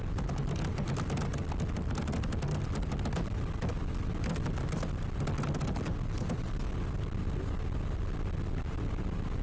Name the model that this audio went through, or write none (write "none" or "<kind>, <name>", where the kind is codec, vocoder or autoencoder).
none